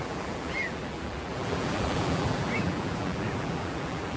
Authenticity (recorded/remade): remade